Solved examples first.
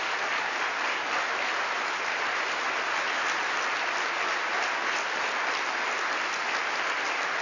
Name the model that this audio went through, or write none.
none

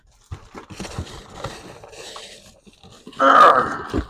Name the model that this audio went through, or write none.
none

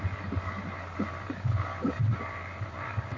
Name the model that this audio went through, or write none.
vocoder, BigVGAN v2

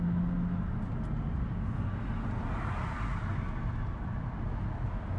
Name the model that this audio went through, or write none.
none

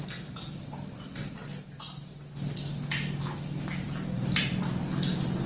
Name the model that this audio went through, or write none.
none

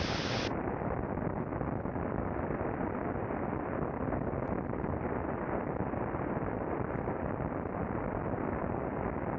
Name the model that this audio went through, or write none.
vocoder, BigVGAN v2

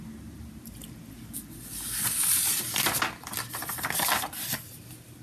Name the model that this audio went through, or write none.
none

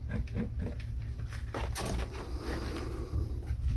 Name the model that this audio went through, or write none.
none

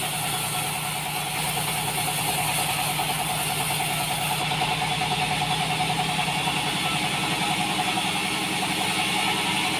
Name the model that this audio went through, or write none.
none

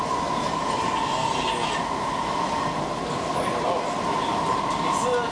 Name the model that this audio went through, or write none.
none